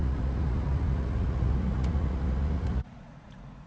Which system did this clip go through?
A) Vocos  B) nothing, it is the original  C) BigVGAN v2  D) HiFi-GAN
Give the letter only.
A